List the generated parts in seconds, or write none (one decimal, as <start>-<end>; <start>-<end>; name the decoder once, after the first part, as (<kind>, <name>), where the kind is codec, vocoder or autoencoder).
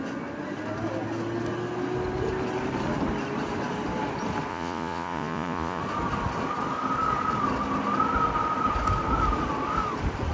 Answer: 4.5-5.8 (vocoder, Vocos)